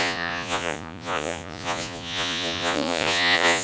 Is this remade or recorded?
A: remade